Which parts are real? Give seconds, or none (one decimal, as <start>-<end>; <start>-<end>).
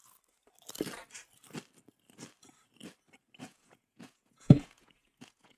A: 0.0-3.4